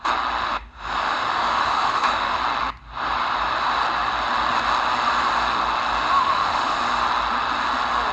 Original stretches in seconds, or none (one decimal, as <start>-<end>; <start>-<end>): 0.0-0.4; 2.4-6.2; 6.8-8.1